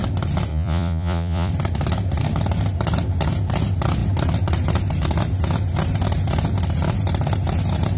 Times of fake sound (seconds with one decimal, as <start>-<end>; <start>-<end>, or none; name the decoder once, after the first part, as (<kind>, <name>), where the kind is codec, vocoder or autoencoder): 0.5-1.5 (vocoder, Vocos)